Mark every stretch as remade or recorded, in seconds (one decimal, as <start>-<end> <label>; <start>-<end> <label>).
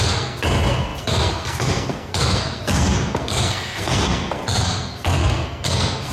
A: 0.0-6.1 remade